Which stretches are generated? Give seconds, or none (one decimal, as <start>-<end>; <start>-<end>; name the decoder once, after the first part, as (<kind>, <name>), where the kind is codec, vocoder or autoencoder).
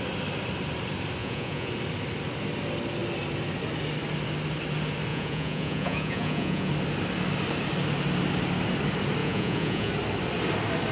1.2-1.7 (vocoder, Vocos); 5.1-6.7; 9.2-9.9